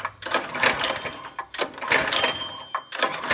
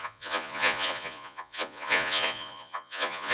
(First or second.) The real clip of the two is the first